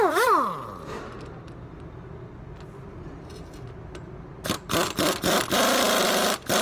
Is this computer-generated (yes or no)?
no